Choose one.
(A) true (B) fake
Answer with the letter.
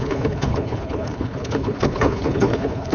B